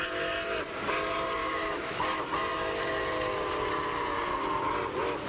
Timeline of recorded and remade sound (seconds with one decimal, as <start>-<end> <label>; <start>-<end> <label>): 0.0-1.4 recorded; 1.4-2.2 remade; 2.2-5.3 recorded

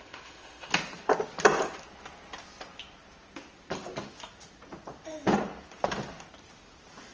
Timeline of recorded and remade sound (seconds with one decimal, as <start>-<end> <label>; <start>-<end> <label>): 0.0-0.7 remade; 0.7-7.1 recorded